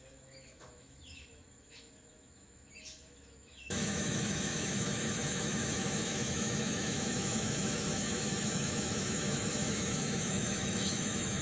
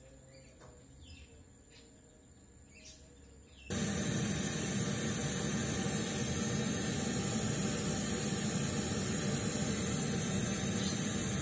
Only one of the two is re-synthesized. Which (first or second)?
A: first